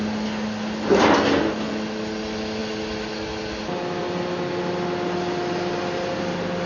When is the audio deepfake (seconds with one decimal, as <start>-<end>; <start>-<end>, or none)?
none